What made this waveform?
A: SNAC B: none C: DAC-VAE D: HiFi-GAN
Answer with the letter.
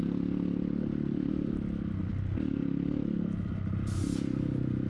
B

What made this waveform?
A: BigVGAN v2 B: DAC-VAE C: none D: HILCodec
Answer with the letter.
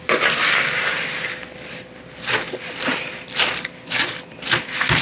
C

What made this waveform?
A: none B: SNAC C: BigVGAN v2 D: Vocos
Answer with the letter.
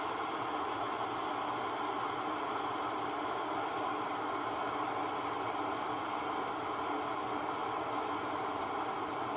A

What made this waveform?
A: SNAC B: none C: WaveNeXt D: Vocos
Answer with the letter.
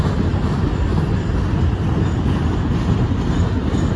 B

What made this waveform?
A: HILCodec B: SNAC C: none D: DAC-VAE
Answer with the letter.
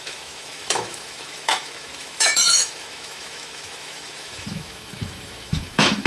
D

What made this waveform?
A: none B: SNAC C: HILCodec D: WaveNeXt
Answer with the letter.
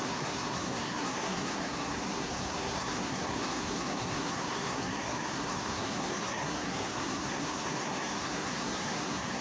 B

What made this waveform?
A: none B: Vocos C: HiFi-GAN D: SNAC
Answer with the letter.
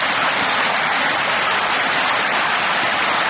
A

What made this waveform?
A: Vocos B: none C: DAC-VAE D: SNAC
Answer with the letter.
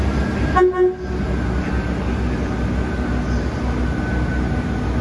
B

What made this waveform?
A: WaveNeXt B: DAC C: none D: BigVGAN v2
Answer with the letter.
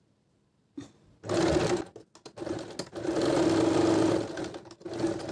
C